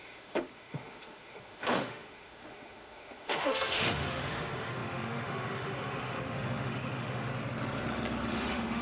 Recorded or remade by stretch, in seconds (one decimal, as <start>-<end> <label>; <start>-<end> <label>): 0.0-7.3 remade; 7.3-8.3 recorded; 8.3-8.8 remade